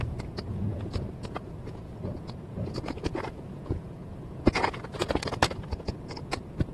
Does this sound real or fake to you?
fake